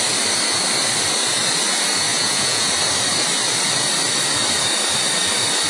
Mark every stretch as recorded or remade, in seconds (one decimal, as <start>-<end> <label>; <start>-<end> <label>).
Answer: 0.0-2.1 recorded; 2.1-2.7 remade; 2.7-5.7 recorded

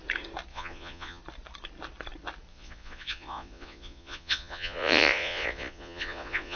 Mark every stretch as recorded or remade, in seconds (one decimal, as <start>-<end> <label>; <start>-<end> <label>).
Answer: 0.0-0.5 recorded; 0.5-1.2 remade; 1.2-2.5 recorded; 2.5-6.6 remade

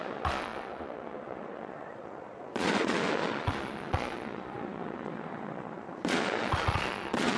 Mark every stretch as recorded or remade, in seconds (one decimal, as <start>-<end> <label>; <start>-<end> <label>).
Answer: 0.0-7.4 remade

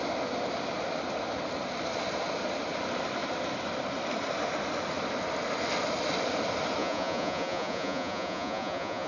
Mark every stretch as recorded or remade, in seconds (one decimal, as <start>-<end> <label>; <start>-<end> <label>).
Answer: 0.0-6.8 recorded; 6.8-9.1 remade

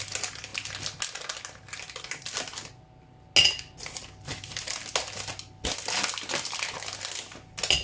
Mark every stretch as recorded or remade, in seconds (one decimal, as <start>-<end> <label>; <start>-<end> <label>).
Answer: 0.0-7.8 recorded